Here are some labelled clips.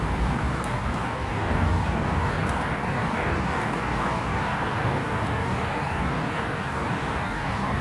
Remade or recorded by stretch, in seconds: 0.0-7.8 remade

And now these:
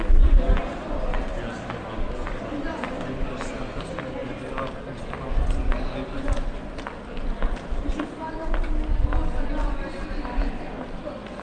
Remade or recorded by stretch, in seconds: 0.0-11.4 recorded

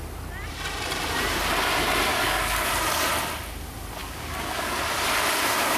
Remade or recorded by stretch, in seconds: 0.0-2.1 recorded; 2.1-2.7 remade; 2.7-4.0 recorded; 4.0-4.8 remade; 4.8-5.8 recorded

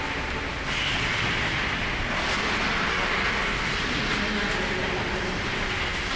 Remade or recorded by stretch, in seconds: 0.0-2.9 recorded; 2.9-3.8 remade; 3.8-6.2 recorded